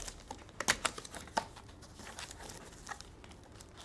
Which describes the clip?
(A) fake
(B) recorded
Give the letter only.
B